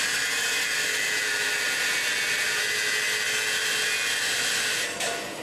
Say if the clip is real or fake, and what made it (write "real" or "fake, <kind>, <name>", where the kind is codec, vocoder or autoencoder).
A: real